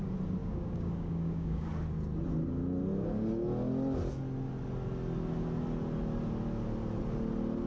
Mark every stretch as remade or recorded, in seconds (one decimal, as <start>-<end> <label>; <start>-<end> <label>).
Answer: 0.0-0.4 recorded; 0.4-1.7 remade; 1.7-7.7 recorded